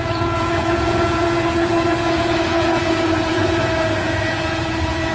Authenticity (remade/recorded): remade